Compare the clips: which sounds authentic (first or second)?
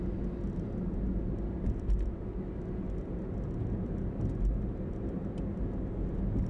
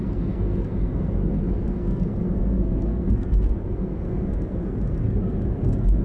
first